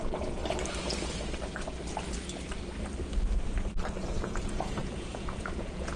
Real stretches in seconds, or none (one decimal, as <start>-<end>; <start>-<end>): 0.4-4.0